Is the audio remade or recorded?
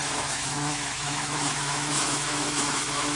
remade